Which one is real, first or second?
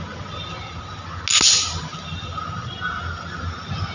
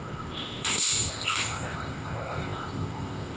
first